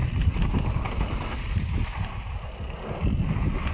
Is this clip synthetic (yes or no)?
no